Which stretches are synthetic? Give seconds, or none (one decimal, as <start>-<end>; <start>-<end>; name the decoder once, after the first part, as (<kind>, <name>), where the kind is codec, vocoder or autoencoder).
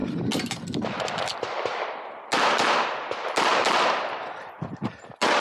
none